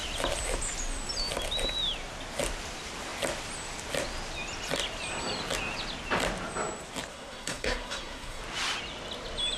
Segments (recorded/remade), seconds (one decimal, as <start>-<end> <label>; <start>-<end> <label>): 0.0-7.1 recorded; 7.1-8.4 remade; 8.4-9.6 recorded